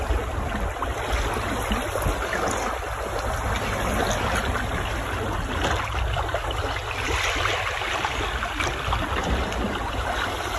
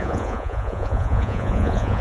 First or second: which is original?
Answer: first